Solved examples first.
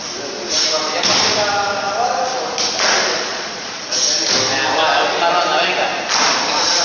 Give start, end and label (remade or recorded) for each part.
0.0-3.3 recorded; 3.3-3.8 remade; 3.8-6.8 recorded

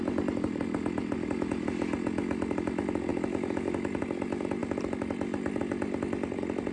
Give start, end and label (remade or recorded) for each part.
0.0-6.7 recorded

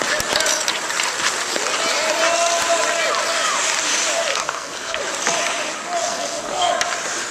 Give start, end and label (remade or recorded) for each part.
0.0-4.3 recorded; 4.3-5.0 remade; 5.0-6.0 recorded; 6.0-6.7 remade; 6.7-7.3 recorded

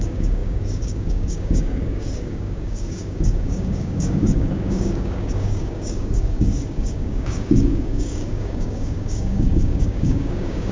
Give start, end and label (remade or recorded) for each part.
0.0-10.7 remade

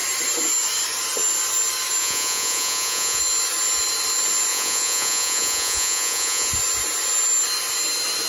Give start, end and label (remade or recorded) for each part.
0.0-2.0 recorded; 2.0-3.2 remade; 3.2-4.5 recorded; 4.5-6.5 remade; 6.5-8.3 recorded